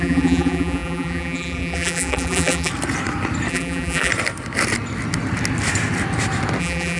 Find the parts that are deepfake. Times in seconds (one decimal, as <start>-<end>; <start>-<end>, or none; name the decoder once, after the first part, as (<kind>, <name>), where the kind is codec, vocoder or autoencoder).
0.0-2.7 (vocoder, BigVGAN v2); 3.5-4.1; 6.6-7.0

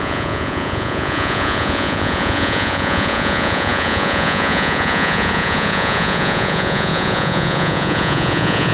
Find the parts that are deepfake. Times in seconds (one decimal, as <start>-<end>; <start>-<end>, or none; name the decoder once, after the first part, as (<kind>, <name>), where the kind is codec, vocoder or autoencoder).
0.0-8.7 (vocoder, Vocos)

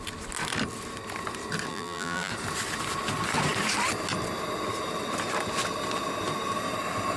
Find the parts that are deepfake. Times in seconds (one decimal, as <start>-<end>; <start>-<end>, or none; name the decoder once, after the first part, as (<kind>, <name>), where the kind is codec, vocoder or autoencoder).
1.7-2.3 (vocoder, BigVGAN v2)

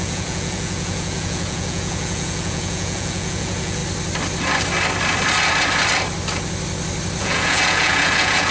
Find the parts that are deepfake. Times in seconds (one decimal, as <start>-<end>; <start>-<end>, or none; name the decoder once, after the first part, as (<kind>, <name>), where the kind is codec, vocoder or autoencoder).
0.0-3.8 (vocoder, Vocos); 7.2-8.5

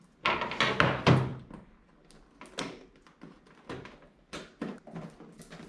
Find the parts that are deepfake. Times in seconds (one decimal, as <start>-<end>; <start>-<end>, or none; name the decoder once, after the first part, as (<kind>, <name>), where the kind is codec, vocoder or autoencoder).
none

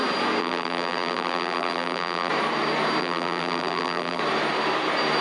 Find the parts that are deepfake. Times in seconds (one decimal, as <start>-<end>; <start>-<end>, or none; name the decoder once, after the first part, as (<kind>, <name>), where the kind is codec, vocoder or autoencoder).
0.4-2.3 (vocoder, BigVGAN v2); 3.0-4.2